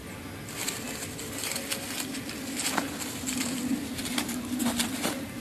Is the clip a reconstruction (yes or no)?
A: no